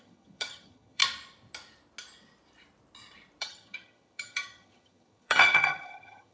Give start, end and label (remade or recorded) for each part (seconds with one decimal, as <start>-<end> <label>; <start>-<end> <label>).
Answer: 0.0-1.0 remade; 1.0-3.4 recorded; 3.4-6.3 remade